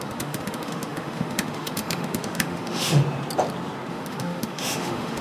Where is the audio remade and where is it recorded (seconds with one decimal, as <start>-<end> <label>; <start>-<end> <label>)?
0.0-3.0 remade; 3.0-3.9 recorded; 3.9-5.2 remade